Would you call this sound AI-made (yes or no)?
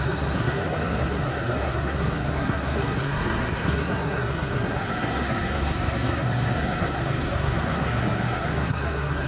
yes